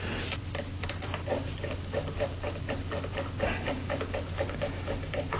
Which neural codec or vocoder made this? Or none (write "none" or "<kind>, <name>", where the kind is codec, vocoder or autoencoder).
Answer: none